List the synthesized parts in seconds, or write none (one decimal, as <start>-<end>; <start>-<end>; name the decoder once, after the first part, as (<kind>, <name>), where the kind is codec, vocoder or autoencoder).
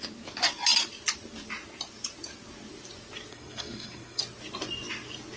3.3-4.2 (codec, SNAC)